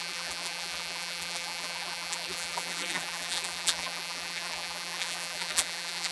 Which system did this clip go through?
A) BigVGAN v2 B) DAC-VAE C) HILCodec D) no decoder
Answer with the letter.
A